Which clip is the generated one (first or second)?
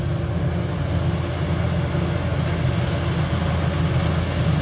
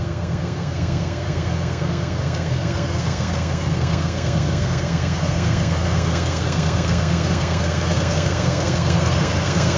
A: second